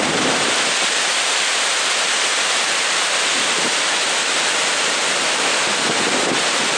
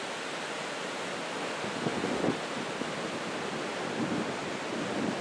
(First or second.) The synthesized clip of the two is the first